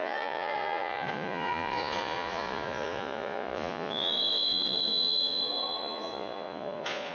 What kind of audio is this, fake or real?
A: fake